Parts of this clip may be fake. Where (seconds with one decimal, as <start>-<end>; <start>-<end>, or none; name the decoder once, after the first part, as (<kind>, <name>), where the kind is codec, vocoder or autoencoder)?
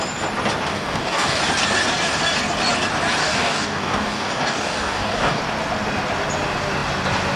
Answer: 0.7-1.4 (codec, DAC); 3.2-5.4